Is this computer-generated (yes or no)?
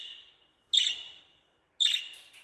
no